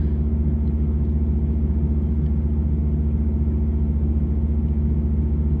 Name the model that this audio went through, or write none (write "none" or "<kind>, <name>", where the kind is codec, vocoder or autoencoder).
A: none